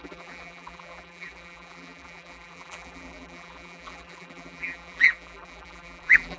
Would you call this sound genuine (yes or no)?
no